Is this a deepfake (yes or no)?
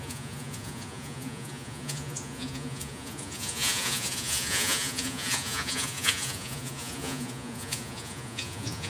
yes